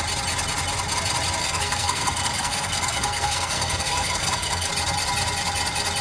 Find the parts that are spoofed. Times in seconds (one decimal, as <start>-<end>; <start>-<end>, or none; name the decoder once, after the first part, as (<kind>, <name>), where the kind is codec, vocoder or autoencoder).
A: 1.4-4.7 (codec, SNAC)